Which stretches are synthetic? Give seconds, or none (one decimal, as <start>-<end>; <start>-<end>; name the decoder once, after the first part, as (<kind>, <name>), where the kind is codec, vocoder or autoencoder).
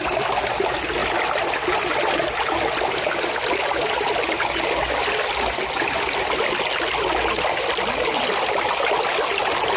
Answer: none